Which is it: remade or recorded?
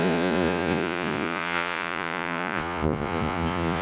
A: remade